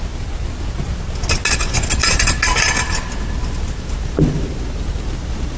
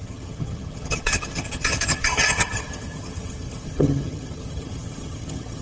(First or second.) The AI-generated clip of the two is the second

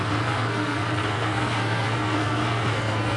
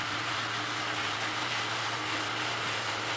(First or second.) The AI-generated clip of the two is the first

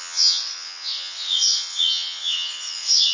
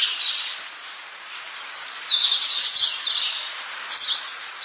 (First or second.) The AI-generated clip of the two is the first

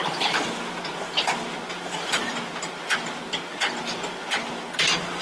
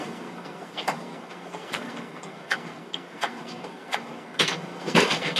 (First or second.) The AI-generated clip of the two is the second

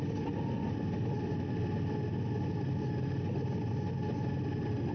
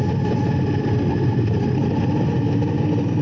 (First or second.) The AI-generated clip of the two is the second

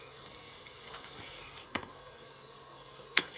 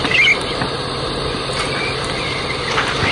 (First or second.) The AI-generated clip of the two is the first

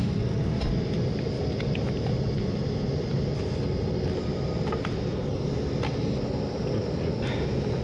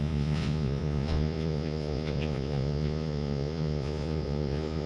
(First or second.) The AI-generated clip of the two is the second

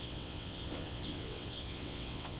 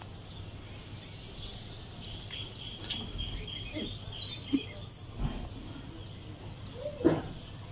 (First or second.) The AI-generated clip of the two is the first